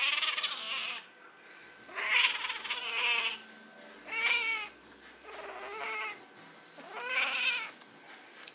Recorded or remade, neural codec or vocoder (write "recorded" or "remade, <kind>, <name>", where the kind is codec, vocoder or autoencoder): recorded